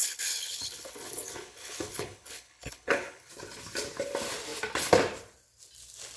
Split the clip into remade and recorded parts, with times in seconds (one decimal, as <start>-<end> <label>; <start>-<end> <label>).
0.0-3.3 remade; 3.3-6.2 recorded